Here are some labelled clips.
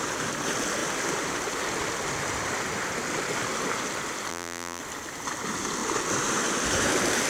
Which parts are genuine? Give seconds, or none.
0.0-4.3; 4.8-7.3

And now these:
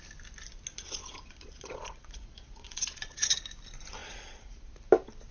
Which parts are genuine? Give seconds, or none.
0.0-0.7; 3.4-4.0; 4.7-5.3

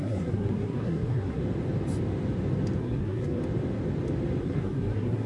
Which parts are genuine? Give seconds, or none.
1.4-2.8; 3.4-4.4